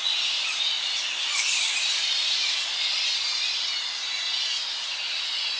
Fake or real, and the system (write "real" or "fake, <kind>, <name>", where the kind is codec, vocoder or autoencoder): real